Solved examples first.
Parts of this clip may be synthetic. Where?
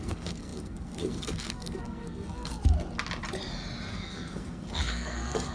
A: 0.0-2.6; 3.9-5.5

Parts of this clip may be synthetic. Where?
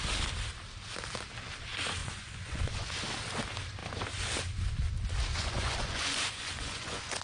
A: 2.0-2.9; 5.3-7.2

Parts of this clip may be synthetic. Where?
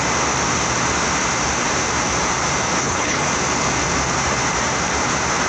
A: 2.8-3.3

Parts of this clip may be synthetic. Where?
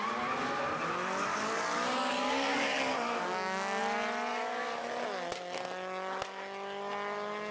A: 1.3-3.8; 4.3-4.9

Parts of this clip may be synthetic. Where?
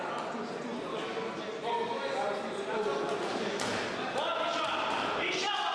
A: none